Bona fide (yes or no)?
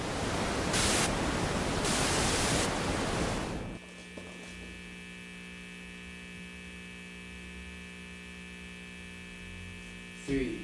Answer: yes